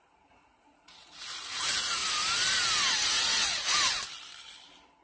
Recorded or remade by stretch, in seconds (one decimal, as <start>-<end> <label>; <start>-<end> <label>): 0.0-2.0 remade; 2.0-2.9 recorded; 2.9-3.7 remade; 3.7-5.0 recorded